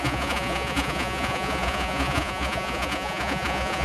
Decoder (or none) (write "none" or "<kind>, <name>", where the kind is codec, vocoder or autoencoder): vocoder, Vocos